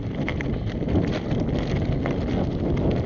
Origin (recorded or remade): recorded